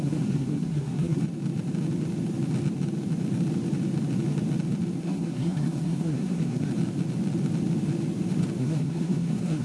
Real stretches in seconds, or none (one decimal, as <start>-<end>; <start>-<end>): 1.2-5.0; 6.7-8.6